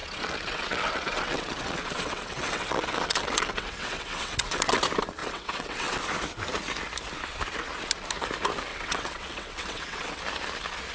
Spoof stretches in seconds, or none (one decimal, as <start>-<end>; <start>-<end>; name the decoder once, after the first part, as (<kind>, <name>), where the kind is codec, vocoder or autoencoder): 0.0-4.8 (vocoder, WaveNeXt); 5.2-6.0; 8.7-10.2